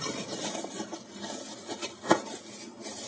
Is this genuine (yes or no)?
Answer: yes